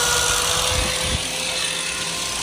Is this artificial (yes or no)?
no